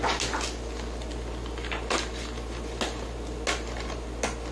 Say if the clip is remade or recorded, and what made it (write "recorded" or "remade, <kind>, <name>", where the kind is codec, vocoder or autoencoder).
recorded